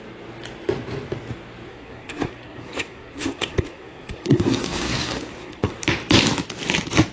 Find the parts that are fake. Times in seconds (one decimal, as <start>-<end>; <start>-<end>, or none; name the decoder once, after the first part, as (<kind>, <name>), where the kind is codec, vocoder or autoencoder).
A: 1.7-5.7 (codec, SNAC)